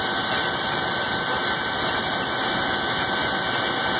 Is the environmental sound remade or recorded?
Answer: recorded